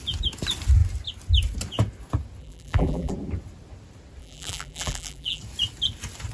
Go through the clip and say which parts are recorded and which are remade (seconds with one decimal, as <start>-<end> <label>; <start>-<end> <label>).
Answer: 0.0-2.4 recorded; 2.4-3.1 remade; 3.1-4.2 recorded; 4.2-5.4 remade; 5.4-6.3 recorded